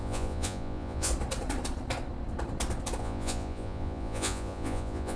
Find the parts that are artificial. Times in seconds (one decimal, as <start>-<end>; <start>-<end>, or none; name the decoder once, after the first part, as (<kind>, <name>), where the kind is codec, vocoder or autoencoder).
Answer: 0.0-1.1 (vocoder, Vocos); 3.0-5.2